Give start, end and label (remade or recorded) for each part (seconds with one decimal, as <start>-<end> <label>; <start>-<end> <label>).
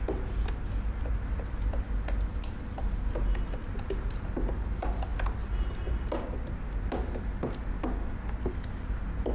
0.0-9.3 recorded